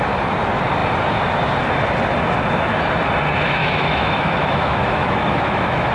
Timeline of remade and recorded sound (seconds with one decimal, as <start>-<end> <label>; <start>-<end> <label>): 0.0-3.6 recorded; 3.6-5.9 remade